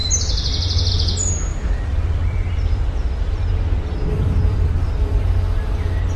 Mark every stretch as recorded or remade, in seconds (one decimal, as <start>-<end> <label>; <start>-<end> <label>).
0.0-1.5 recorded; 1.5-3.5 remade; 3.5-4.5 recorded; 4.5-5.2 remade; 5.2-6.2 recorded